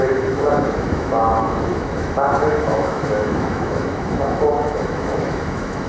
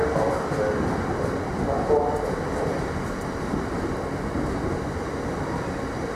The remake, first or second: first